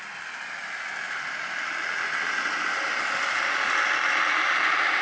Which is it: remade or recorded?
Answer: recorded